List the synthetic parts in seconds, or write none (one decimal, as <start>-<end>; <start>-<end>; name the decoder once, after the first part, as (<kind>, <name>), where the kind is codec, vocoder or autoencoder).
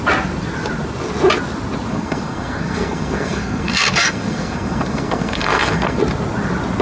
1.9-6.0 (codec, SNAC)